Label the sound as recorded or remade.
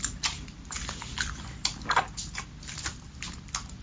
recorded